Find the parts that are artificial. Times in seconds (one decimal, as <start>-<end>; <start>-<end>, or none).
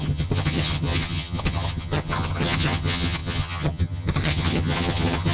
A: 0.0-5.3